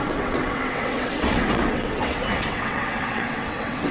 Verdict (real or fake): fake